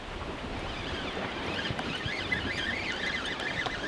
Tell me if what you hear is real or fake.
fake